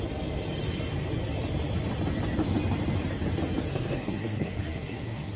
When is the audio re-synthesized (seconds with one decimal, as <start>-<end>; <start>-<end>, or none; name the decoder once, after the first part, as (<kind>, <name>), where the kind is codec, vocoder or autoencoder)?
3.7-5.4 (codec, SNAC)